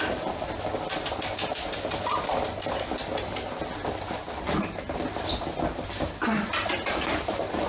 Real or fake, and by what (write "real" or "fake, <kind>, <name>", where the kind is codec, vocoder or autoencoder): real